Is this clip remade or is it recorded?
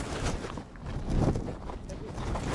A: recorded